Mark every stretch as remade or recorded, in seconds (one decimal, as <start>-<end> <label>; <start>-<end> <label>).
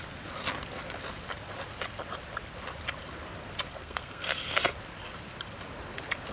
0.0-3.7 recorded; 3.7-4.6 remade; 4.6-6.3 recorded